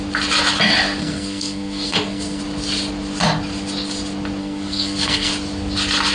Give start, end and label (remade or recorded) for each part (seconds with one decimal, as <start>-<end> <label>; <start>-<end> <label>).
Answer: 0.0-1.0 recorded; 1.0-2.4 remade; 2.4-4.4 recorded; 4.4-5.3 remade; 5.3-6.1 recorded